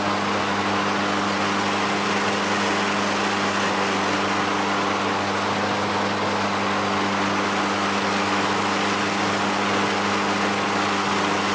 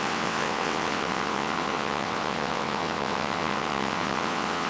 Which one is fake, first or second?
second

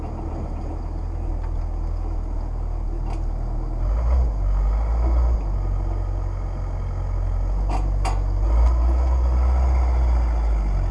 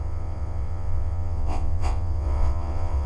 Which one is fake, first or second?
second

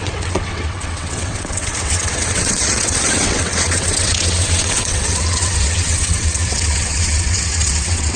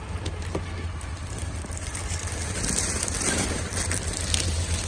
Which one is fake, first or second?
first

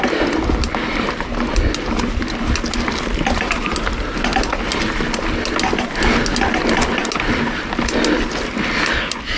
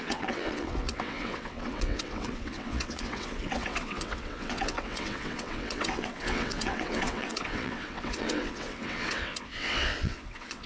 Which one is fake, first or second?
second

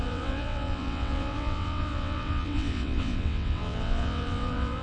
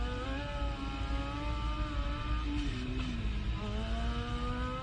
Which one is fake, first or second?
first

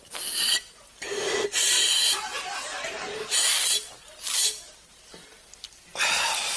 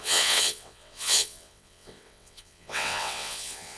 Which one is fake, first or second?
second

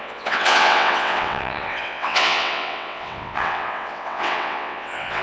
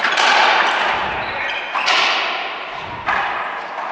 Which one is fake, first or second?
first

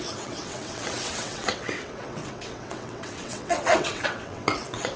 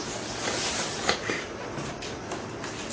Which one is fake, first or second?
first